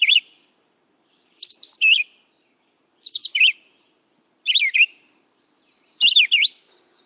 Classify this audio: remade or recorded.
remade